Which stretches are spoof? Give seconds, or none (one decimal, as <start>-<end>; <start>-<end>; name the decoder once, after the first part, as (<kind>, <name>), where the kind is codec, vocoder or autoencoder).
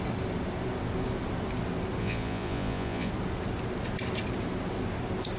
2.0-3.1 (vocoder, Vocos)